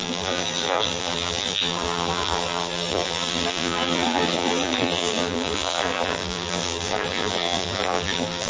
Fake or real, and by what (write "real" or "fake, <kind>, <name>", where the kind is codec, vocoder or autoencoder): fake, vocoder, BigVGAN v2